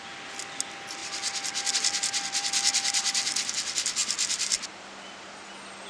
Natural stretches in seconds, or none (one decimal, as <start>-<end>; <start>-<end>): 0.0-5.9